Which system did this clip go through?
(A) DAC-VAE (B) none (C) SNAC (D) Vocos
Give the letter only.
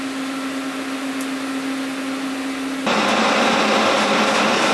B